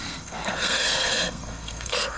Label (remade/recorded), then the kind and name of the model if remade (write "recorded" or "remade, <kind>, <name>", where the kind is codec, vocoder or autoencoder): remade, codec, SNAC